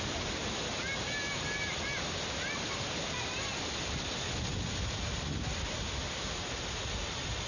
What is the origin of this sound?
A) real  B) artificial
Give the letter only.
A